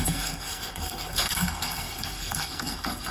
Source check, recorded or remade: remade